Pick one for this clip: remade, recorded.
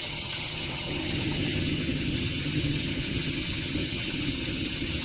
remade